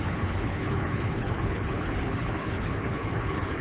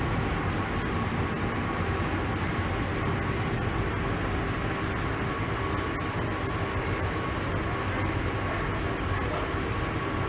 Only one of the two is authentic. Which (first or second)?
second